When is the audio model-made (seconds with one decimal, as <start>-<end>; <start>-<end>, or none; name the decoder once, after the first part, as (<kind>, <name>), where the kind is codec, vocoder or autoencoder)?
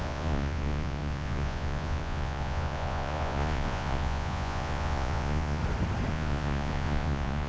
0.0-5.6 (vocoder, Vocos); 6.1-7.5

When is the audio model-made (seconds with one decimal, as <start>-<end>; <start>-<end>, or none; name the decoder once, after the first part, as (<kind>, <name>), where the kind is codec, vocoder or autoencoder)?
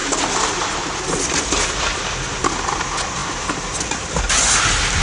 none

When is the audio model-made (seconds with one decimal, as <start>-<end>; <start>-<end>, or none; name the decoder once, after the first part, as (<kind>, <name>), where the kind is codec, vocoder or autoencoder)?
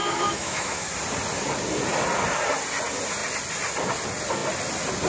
0.0-0.9 (autoencoder, DAC-VAE)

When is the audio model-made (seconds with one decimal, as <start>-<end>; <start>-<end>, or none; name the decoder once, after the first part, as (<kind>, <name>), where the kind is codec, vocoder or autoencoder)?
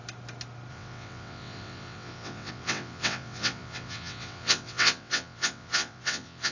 0.7-6.5 (vocoder, WaveNeXt)